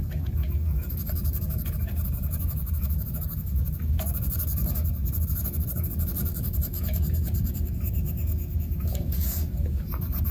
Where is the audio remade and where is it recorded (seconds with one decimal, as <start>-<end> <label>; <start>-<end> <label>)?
0.0-10.3 remade